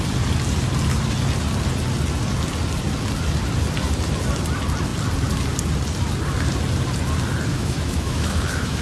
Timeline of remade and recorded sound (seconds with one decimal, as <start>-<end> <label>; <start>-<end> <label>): 0.0-7.5 recorded; 7.5-8.8 remade